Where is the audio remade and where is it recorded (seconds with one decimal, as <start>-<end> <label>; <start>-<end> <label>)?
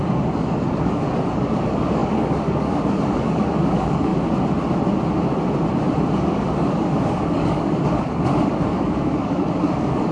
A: 0.0-4.1 remade; 4.1-6.1 recorded; 6.1-10.1 remade